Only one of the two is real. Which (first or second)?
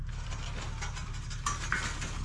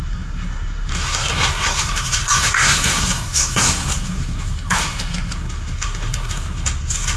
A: first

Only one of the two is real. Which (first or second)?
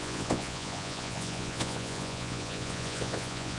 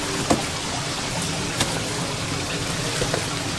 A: second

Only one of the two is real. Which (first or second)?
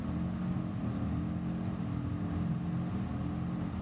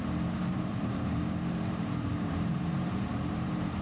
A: first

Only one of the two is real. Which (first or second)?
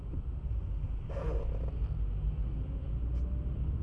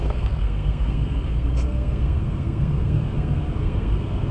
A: first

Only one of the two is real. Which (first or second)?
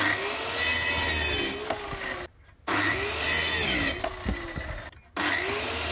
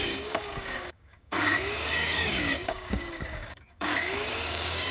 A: first